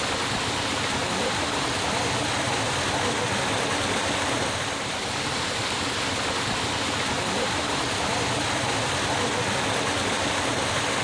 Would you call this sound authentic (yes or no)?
yes